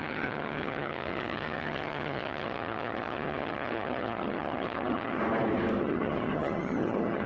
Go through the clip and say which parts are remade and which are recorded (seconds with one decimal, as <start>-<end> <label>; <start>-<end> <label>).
0.0-5.2 remade; 5.2-5.8 recorded; 5.8-7.3 remade